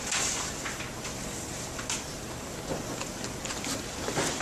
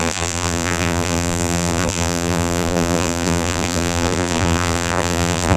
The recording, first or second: first